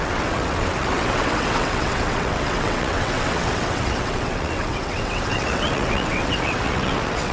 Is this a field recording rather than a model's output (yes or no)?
no